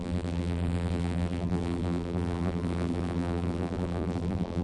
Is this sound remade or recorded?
remade